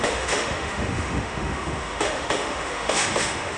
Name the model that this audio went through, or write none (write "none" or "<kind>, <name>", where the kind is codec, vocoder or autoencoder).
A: autoencoder, DAC-VAE